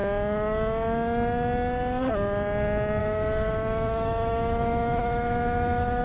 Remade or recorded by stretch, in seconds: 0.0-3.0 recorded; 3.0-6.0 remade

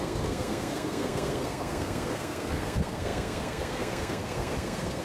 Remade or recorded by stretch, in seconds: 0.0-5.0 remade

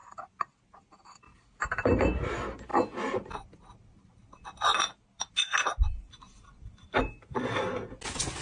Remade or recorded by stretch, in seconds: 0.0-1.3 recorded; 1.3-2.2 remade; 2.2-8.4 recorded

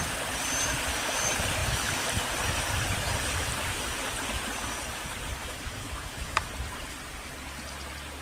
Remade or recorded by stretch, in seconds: 0.0-5.4 recorded; 5.4-6.5 remade; 6.5-8.2 recorded

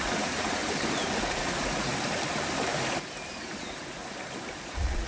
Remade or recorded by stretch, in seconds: 0.0-0.6 remade; 0.6-1.3 recorded; 1.3-1.9 remade; 1.9-3.6 recorded; 3.6-4.0 remade; 4.0-4.6 recorded; 4.6-5.1 remade